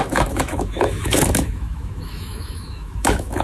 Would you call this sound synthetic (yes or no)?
yes